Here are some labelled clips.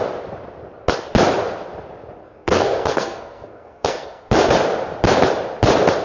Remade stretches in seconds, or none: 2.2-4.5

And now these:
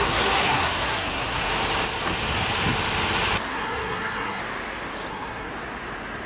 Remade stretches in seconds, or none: 0.0-1.5; 3.5-4.4; 5.1-5.5

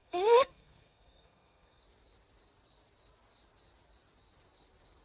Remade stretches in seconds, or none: 0.0-1.8

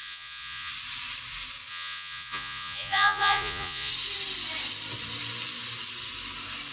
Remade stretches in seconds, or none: 0.0-0.7; 1.7-3.9

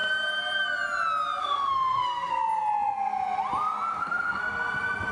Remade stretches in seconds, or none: 1.4-2.4; 3.9-4.4